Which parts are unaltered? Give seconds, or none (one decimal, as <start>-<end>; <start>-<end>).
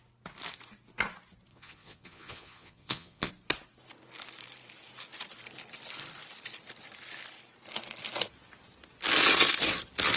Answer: 0.0-1.5; 3.3-10.2